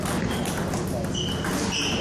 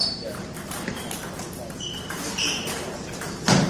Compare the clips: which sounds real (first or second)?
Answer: first